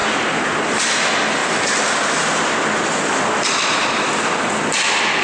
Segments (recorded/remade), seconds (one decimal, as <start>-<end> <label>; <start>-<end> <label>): 0.0-5.2 remade